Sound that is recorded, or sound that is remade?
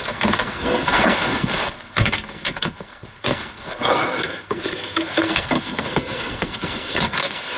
remade